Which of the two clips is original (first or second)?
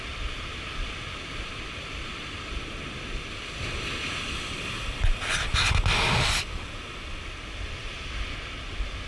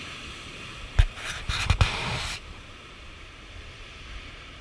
first